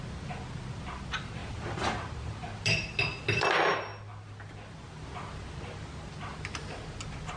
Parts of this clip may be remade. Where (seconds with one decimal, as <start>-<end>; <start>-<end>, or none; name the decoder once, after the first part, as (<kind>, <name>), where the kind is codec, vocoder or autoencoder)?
none